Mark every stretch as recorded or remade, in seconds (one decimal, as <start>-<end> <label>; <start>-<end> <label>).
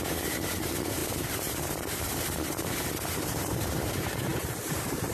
0.0-5.1 remade